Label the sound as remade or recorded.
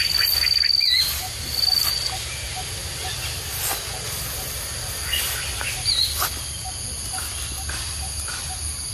recorded